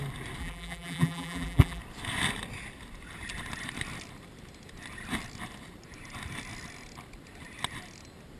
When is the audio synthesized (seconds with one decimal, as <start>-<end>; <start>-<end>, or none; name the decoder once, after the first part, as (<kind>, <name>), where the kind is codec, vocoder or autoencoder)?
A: 0.4-1.8 (vocoder, BigVGAN v2)